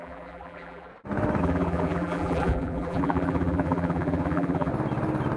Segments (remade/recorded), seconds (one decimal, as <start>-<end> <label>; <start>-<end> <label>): 0.0-0.9 remade; 0.9-1.4 recorded; 1.4-4.7 remade; 4.7-5.4 recorded